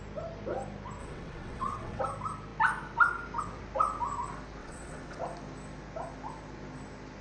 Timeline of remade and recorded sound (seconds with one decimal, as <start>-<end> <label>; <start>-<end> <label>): 0.0-1.0 recorded; 1.0-2.0 remade; 2.0-4.6 recorded; 4.6-5.2 remade; 5.2-7.2 recorded

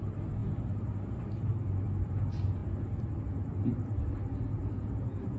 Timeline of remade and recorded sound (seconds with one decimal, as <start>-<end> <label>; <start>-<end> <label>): 0.0-4.6 recorded; 4.6-5.4 remade

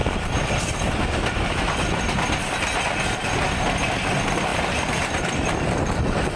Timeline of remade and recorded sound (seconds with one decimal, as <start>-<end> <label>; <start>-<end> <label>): 0.0-0.6 remade; 0.6-4.5 recorded; 4.5-6.4 remade

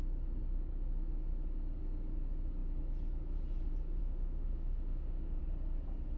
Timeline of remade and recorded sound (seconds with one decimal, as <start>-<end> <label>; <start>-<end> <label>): 0.0-4.0 recorded; 4.0-5.4 remade; 5.4-6.2 recorded

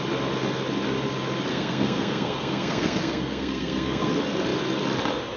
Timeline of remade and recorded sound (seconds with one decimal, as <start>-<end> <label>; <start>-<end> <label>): 0.0-1.5 recorded; 1.5-4.1 remade; 4.1-5.4 recorded

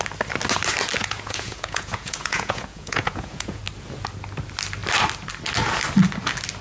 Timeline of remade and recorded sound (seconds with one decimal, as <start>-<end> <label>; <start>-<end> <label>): 0.0-1.0 recorded; 1.0-3.6 remade; 3.6-6.6 recorded